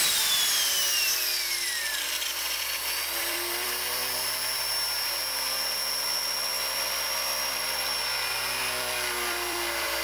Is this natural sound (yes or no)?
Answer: no